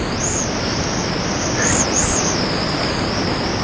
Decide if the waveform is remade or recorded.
recorded